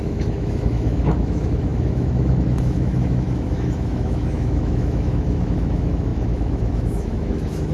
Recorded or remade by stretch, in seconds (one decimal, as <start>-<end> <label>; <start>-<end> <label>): 0.0-7.7 remade